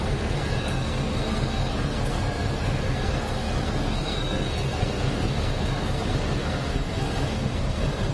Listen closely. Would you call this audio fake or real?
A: fake